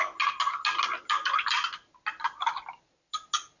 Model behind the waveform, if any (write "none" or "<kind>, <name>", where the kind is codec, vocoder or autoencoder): none